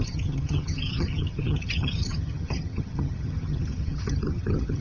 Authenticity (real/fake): fake